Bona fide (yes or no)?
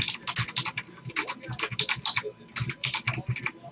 yes